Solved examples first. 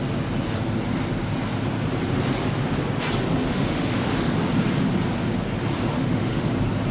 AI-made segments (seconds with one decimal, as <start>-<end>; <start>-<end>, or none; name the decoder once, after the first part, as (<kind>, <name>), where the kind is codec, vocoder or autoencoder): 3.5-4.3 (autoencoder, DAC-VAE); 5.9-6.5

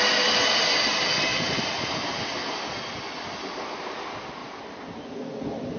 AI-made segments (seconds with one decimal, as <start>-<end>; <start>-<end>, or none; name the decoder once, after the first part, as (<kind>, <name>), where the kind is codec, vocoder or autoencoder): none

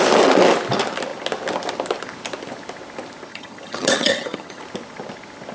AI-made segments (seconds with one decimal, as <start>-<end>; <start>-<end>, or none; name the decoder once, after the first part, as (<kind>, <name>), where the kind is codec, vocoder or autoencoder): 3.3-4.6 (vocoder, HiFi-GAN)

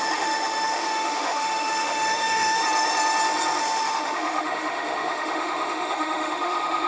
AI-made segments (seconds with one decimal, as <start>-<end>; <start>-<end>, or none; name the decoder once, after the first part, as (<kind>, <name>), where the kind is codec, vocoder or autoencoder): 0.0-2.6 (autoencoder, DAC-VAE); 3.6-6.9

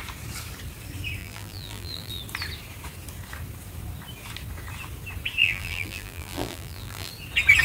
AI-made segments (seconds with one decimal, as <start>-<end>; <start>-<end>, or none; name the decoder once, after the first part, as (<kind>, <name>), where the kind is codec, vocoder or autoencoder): 1.2-2.2 (vocoder, BigVGAN v2); 5.4-7.1

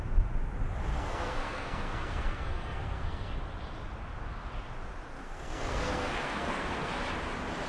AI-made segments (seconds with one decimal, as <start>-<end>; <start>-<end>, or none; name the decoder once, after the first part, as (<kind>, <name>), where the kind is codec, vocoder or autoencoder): 0.9-3.3 (codec, SNAC); 5.2-6.9

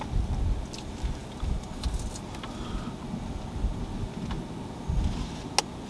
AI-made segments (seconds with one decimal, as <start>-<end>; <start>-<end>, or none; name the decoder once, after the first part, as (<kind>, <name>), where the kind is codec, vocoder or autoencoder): none